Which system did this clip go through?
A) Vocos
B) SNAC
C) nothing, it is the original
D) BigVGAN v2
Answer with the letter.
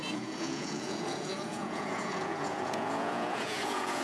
A